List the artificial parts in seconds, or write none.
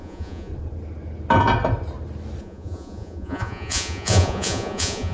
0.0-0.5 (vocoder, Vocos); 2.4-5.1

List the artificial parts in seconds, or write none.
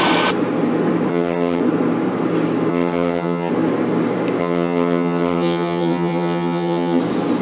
1.1-1.6 (vocoder, HiFi-GAN); 2.7-3.5; 4.4-7.0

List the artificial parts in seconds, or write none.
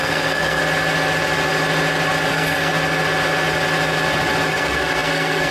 0.0-0.6 (codec, SNAC); 2.3-2.7; 4.5-5.5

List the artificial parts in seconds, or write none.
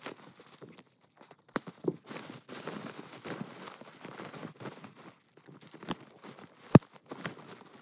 none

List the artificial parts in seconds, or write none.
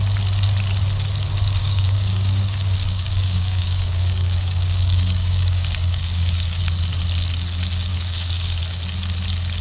1.6-6.6 (codec, DAC); 7.9-8.6